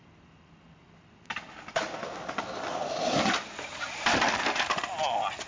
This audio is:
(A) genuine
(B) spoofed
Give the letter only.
A